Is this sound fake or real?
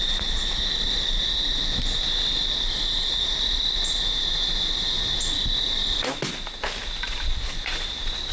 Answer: real